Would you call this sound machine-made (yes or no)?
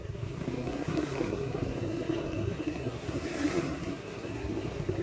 yes